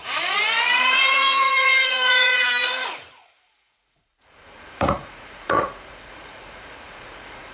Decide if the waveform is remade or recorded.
remade